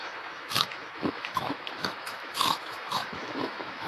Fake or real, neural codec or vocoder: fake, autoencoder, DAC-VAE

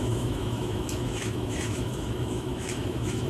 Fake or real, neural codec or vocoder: fake, autoencoder, DAC-VAE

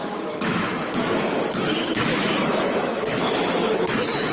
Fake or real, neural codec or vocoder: fake, autoencoder, DAC-VAE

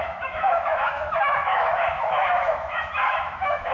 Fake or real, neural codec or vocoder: fake, autoencoder, DAC-VAE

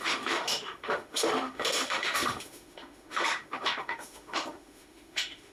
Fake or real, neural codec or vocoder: fake, autoencoder, DAC-VAE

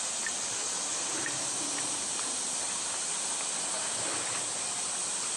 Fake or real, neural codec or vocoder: real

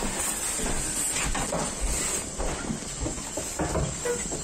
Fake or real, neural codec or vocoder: real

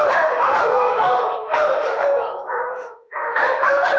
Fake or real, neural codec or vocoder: fake, autoencoder, DAC-VAE